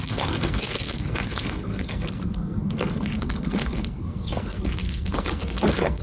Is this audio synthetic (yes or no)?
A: yes